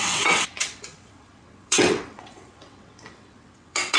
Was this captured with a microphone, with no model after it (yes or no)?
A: no